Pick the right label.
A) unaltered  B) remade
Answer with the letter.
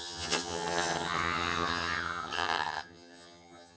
B